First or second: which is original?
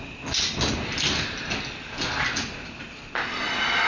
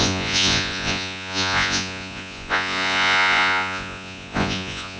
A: first